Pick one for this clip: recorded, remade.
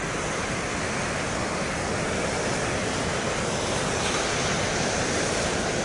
recorded